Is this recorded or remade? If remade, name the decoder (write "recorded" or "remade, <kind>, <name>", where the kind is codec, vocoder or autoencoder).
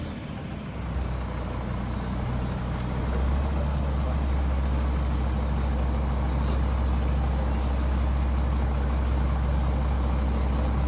recorded